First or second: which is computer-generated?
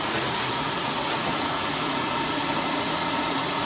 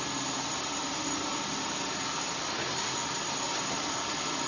first